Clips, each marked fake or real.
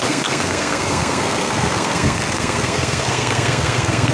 fake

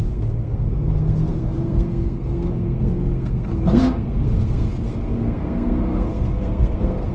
fake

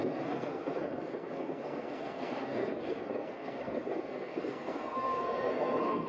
fake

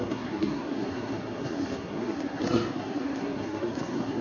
fake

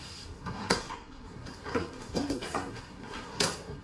fake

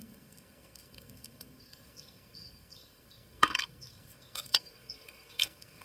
fake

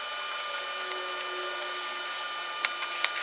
real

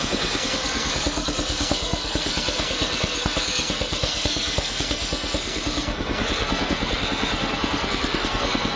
fake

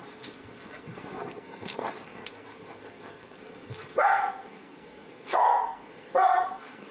fake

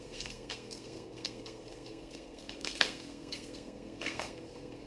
fake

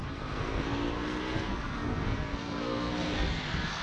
fake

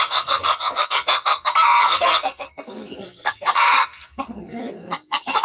fake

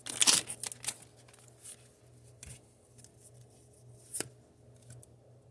real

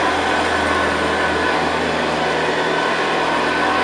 real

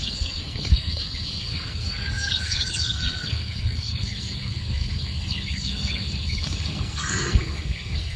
fake